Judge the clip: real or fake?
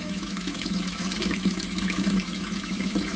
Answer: fake